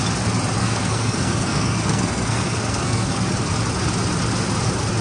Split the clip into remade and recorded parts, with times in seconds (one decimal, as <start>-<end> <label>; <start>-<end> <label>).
0.0-0.6 recorded; 0.6-3.3 remade; 3.3-5.0 recorded